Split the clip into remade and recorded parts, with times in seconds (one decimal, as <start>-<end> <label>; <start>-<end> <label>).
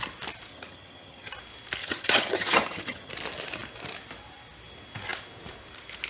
0.0-0.5 recorded; 0.5-1.3 remade; 1.3-1.8 recorded; 1.8-3.1 remade; 3.1-6.1 recorded